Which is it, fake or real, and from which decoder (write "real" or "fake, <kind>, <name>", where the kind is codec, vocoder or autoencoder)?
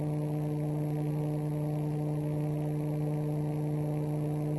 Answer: real